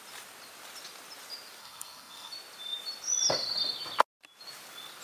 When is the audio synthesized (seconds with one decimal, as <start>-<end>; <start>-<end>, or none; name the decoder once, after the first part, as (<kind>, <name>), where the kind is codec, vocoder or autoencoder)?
1.6-2.3 (codec, SNAC)